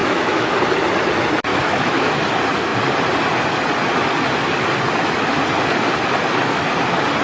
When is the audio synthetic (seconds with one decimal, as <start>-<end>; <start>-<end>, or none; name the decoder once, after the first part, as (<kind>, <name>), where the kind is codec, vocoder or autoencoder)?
0.0-0.5 (autoencoder, DAC-VAE); 1.5-2.1